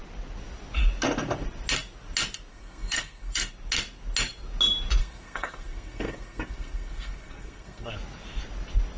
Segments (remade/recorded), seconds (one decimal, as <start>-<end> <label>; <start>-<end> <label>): 0.0-2.5 recorded; 2.5-3.5 remade; 3.5-5.0 recorded; 5.0-7.9 remade; 7.9-9.0 recorded